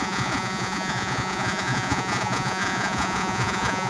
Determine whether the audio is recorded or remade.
remade